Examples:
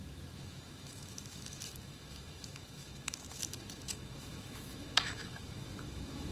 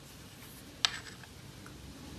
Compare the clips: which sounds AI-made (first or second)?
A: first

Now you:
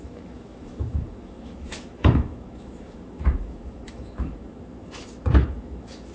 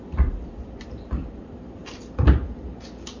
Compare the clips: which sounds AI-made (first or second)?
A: first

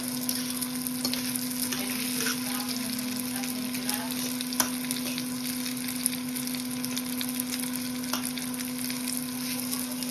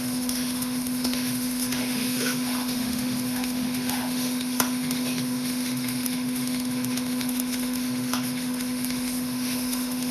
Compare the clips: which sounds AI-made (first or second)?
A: second